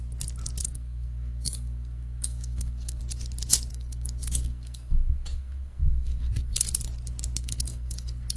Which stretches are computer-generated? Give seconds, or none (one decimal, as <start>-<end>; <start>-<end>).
0.6-3.0; 3.7-6.7; 7.4-8.4